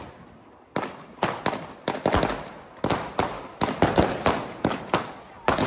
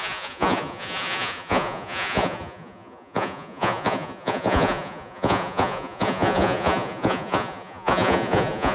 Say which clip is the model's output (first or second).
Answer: second